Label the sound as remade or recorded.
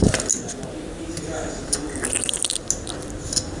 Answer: recorded